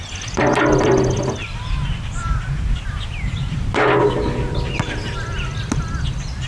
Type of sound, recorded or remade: recorded